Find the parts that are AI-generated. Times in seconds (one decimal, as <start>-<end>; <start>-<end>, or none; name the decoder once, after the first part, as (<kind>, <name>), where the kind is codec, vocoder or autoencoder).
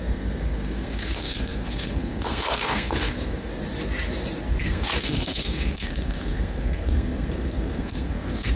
0.0-3.5 (codec, SNAC); 4.6-8.6